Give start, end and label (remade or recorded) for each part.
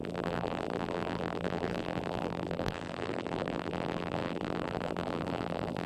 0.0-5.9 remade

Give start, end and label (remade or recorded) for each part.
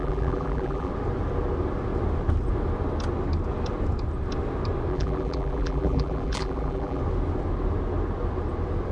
0.0-0.9 remade; 0.9-4.9 recorded; 4.9-7.0 remade; 7.0-8.9 recorded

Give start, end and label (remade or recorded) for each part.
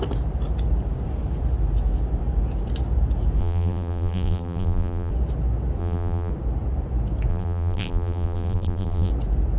0.0-3.4 recorded; 3.4-5.1 remade; 5.1-5.8 recorded; 5.8-6.3 remade; 6.3-7.3 recorded; 7.3-9.1 remade; 9.1-9.6 recorded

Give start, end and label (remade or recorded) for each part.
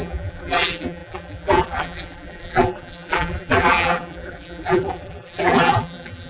0.0-6.3 remade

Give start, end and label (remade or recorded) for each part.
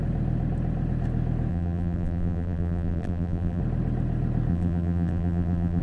0.0-1.5 recorded; 1.5-3.6 remade; 3.6-4.5 recorded; 4.5-5.8 remade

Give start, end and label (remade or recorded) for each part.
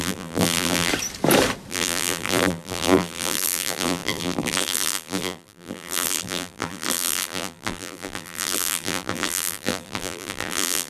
0.0-0.9 remade; 0.9-1.7 recorded; 1.7-10.9 remade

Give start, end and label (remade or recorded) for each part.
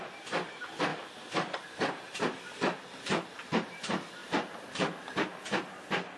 0.0-0.9 remade; 0.9-2.4 recorded; 2.4-6.2 remade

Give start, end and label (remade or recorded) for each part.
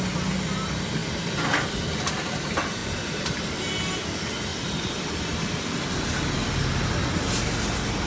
0.0-2.8 recorded; 2.8-3.4 remade; 3.4-4.5 recorded; 4.5-5.5 remade; 5.5-8.1 recorded